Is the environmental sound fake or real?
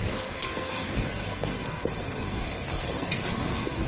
fake